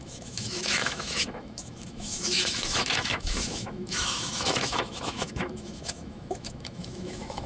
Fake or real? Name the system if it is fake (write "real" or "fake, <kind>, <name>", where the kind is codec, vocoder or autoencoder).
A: fake, autoencoder, DAC-VAE